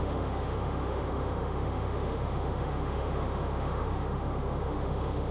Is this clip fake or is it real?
fake